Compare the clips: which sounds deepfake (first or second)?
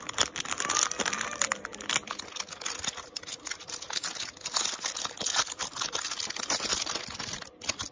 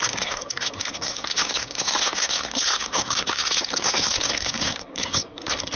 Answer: second